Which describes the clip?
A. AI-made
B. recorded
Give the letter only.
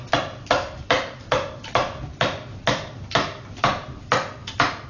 B